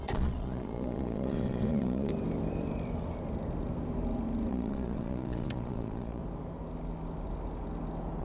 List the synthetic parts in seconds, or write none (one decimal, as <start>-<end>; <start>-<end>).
0.0-2.1; 4.5-6.2